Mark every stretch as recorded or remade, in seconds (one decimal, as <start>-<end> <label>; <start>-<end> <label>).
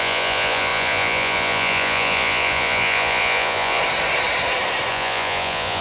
0.0-3.8 remade; 3.8-4.9 recorded; 4.9-5.8 remade